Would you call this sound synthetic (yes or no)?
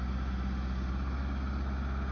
no